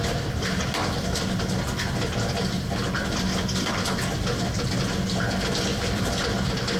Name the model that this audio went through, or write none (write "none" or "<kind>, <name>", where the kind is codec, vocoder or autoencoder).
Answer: none